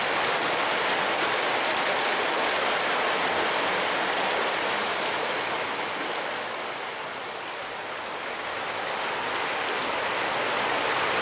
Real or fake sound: real